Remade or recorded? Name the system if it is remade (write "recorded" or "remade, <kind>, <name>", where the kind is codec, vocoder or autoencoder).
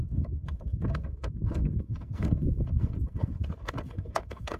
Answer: remade, codec, SNAC